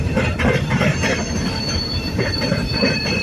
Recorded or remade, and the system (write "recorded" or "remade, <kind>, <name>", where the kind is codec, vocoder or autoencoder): remade, vocoder, BigVGAN v2